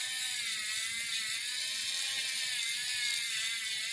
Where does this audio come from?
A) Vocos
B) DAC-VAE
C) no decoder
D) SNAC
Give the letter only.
C